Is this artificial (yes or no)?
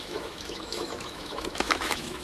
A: yes